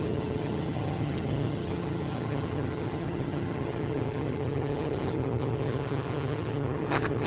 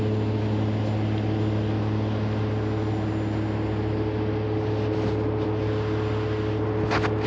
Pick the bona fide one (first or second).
second